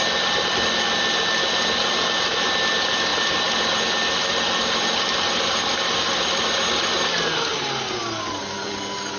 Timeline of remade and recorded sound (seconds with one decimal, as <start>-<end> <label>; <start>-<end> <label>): 0.0-9.2 recorded